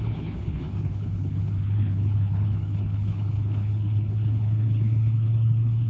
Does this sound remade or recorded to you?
remade